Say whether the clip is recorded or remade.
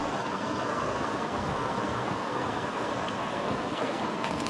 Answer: remade